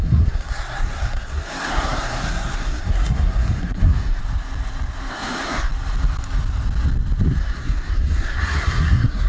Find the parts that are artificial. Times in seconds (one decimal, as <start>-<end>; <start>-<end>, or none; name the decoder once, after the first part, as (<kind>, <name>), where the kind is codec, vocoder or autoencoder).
0.0-4.2 (codec, SNAC); 5.1-5.7; 7.4-9.3